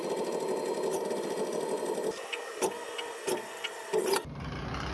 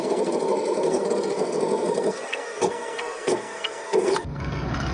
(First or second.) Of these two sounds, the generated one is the second